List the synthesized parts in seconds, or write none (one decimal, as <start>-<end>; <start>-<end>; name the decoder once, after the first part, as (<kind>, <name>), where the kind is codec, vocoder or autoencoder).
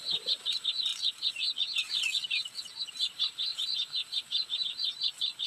0.0-0.9 (vocoder, BigVGAN v2); 2.6-5.5